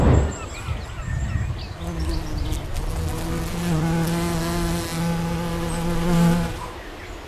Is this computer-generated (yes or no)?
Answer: no